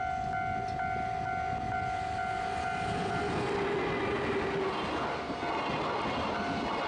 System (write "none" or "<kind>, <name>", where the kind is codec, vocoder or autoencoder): none